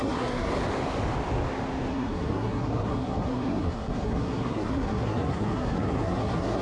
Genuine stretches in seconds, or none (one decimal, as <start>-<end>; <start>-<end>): 0.5-1.9